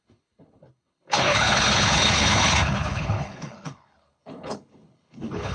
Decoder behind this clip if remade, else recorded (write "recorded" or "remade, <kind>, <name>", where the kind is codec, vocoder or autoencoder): remade, codec, HILCodec